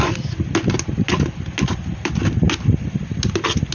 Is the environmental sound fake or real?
real